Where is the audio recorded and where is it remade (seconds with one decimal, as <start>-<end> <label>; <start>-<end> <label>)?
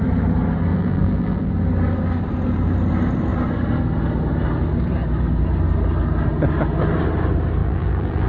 0.0-0.7 recorded; 0.7-1.5 remade; 1.5-7.6 recorded; 7.6-8.3 remade